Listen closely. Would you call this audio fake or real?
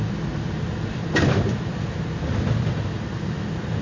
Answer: fake